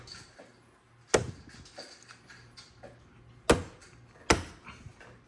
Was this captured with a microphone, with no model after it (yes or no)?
yes